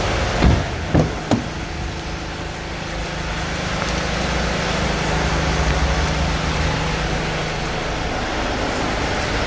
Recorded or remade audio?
recorded